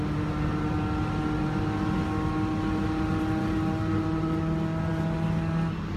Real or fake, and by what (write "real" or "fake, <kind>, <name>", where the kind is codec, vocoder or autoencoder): real